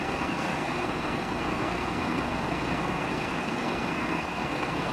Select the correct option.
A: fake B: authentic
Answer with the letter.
A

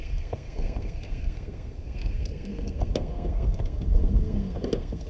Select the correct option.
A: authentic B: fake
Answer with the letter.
B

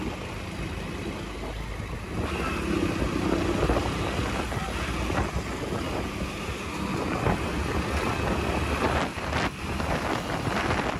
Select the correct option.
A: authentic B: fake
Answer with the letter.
A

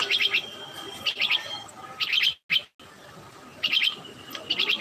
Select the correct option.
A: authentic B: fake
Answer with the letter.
A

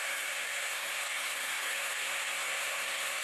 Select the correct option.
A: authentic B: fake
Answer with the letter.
B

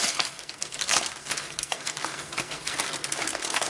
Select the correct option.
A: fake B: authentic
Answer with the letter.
A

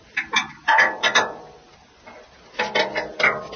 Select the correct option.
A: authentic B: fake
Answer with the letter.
A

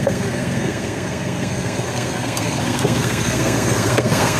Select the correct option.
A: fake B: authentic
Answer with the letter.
A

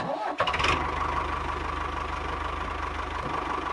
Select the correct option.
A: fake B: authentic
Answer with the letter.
B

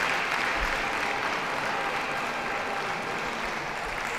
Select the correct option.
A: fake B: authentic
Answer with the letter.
B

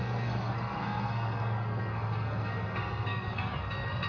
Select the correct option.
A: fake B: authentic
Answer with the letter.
A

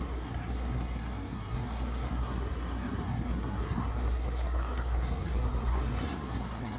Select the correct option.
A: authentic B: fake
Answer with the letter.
B